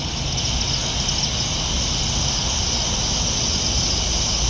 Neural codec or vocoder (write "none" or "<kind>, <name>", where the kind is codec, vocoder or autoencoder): none